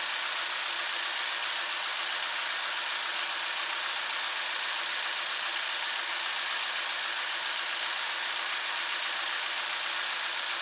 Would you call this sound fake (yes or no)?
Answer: no